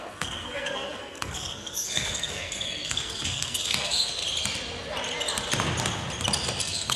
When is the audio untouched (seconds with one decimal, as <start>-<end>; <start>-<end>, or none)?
4.2-6.6